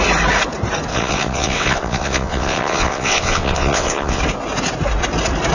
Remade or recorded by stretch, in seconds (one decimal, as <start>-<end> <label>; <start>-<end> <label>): 0.0-0.9 recorded; 0.9-4.2 remade; 4.2-5.5 recorded